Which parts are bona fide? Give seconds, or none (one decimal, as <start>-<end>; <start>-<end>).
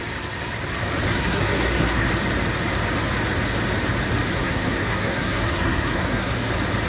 0.0-1.1; 2.1-4.3; 6.5-6.9